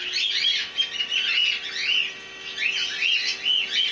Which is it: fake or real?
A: real